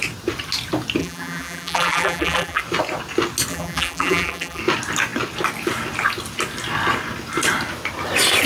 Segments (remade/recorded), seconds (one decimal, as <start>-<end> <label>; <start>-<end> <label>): 0.0-1.0 recorded; 1.0-2.6 remade; 2.6-3.5 recorded; 3.5-4.6 remade; 4.6-8.5 recorded